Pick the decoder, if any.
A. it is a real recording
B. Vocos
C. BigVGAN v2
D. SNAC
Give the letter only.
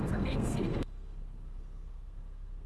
D